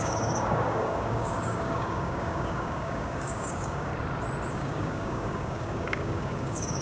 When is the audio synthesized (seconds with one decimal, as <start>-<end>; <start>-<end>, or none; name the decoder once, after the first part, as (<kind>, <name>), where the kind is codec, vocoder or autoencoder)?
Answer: 0.0-3.9 (codec, DAC); 4.5-6.8